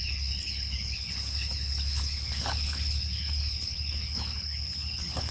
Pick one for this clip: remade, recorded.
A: remade